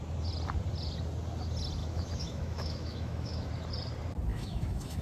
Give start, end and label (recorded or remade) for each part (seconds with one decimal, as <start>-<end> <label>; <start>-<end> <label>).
0.0-1.8 recorded; 1.8-3.5 remade; 3.5-4.3 recorded; 4.3-5.0 remade